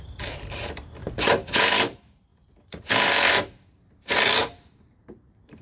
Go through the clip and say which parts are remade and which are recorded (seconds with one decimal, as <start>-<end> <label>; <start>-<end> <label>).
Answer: 0.0-5.6 remade